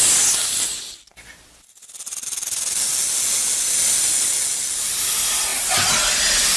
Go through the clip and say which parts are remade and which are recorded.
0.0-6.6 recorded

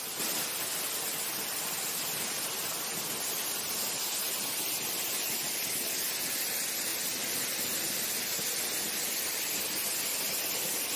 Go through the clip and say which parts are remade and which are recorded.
0.0-11.0 recorded

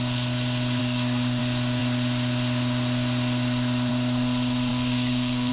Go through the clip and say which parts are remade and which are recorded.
0.0-0.8 recorded; 0.8-1.4 remade; 1.4-4.7 recorded; 4.7-5.5 remade

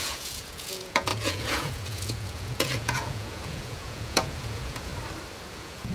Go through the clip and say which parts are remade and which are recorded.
0.0-4.9 remade; 4.9-5.5 recorded; 5.5-5.9 remade

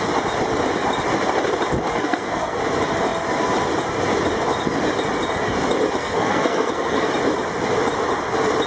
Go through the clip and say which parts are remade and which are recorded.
0.0-1.9 recorded; 1.9-2.6 remade; 2.6-6.0 recorded; 6.0-7.1 remade; 7.1-8.7 recorded

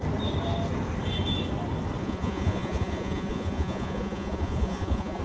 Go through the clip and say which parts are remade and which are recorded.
0.0-2.0 recorded; 2.0-5.2 remade

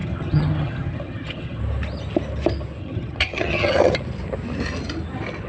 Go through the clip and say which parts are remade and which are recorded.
0.0-1.6 remade; 1.6-2.8 recorded; 2.8-3.9 remade; 3.9-5.5 recorded

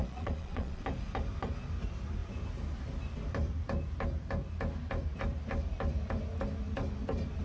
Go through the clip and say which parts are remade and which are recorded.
0.0-0.8 remade; 0.8-7.4 recorded